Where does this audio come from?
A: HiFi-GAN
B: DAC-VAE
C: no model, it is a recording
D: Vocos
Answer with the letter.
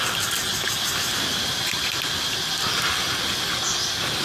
C